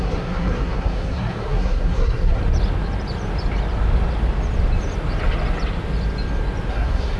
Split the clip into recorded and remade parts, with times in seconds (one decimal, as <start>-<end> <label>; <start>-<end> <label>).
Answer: 0.0-2.4 remade; 2.4-6.7 recorded; 6.7-7.2 remade